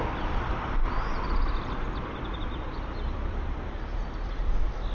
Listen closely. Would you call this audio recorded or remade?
remade